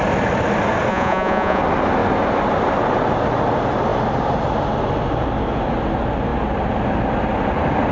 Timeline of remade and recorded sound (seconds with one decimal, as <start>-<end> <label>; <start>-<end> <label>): 0.0-0.9 recorded; 0.9-1.6 remade; 1.6-7.9 recorded